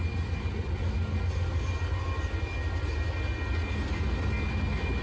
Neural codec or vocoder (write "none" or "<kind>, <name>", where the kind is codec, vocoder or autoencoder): none